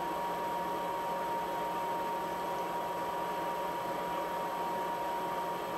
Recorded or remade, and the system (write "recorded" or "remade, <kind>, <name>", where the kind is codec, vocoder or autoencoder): recorded